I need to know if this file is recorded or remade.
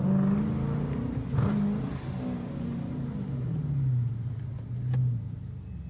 recorded